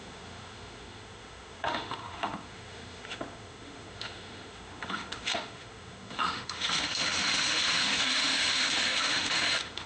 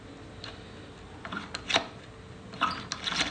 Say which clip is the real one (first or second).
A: second